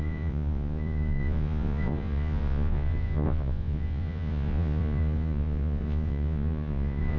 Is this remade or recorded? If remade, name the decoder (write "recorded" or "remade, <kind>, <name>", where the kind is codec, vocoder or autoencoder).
remade, vocoder, Vocos